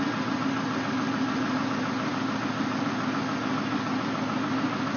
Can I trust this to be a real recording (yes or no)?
yes